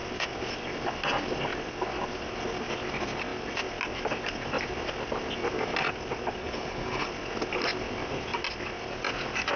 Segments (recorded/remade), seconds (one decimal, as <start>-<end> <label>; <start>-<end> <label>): 0.0-6.4 recorded; 6.4-7.1 remade; 7.1-9.6 recorded